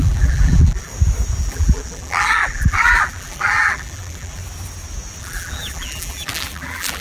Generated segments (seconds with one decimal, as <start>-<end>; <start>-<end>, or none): 0.0-0.9; 1.4-4.4; 5.2-7.0